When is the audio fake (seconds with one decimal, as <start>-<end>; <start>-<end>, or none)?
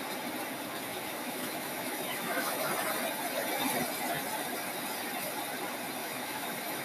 0.9-2.7; 6.0-6.8